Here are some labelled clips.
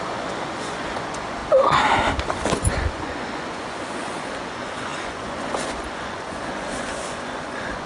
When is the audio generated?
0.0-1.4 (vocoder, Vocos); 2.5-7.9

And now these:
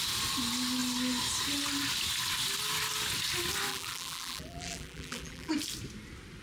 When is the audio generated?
3.7-5.5 (vocoder, BigVGAN v2)

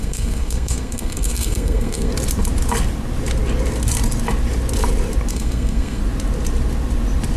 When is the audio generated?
0.0-2.1 (codec, SNAC); 5.3-6.0

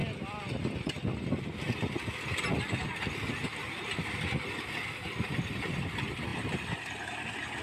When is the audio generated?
none

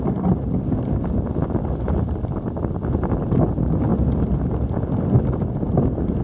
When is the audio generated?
none

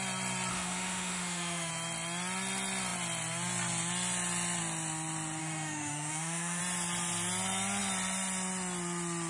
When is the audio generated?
0.5-1.7 (autoencoder, DAC-VAE); 5.4-6.6

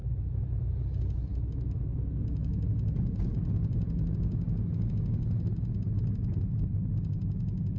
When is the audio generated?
0.0-0.7 (autoencoder, DAC-VAE); 1.3-2.7

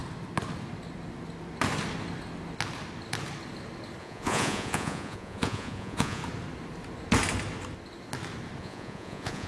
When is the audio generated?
4.0-6.2 (vocoder, Vocos); 8.6-9.5